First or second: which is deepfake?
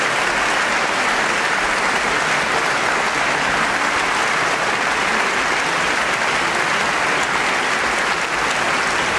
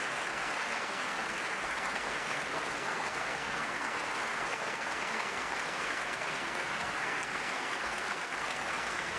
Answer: second